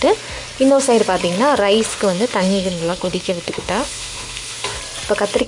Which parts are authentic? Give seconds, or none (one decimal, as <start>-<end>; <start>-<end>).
0.0-1.9; 4.8-5.5